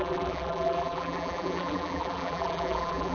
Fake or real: fake